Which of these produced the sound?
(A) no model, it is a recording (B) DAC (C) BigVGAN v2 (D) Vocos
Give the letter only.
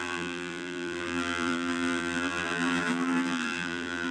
C